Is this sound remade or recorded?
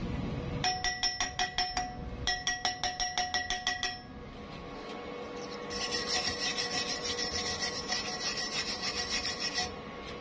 recorded